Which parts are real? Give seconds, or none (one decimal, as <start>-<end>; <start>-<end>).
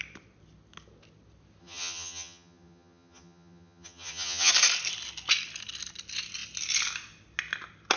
0.0-1.6; 4.5-8.0